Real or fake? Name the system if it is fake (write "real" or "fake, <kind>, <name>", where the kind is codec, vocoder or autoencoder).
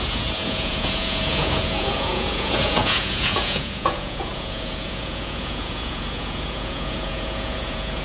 fake, vocoder, Vocos